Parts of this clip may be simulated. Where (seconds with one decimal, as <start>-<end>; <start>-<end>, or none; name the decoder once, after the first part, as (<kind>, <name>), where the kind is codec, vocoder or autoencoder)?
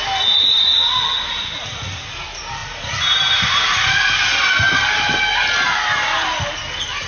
none